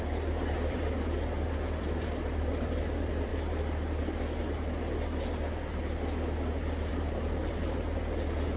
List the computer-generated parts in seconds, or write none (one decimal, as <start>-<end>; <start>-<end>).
0.0-3.3; 6.9-7.6